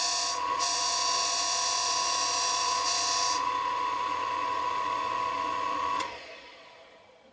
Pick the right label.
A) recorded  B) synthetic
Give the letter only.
B